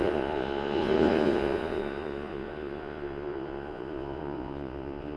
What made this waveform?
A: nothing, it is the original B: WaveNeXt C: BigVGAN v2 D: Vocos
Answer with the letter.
D